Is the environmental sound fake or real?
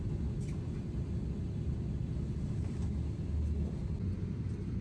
real